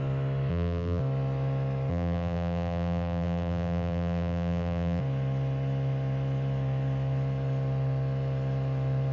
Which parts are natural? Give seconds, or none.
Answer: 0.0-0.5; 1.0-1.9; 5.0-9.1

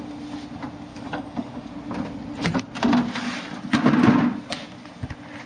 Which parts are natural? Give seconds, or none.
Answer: 0.0-0.9; 1.7-5.5